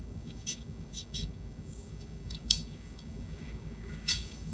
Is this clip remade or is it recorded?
remade